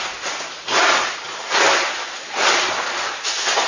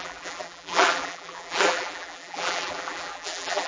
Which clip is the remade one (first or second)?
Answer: second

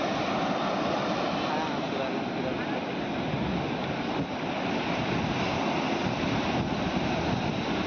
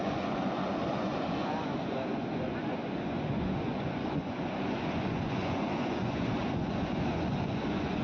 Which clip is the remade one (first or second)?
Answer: second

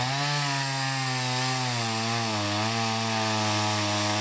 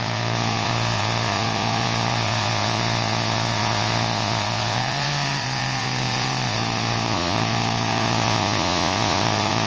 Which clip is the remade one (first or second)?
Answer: second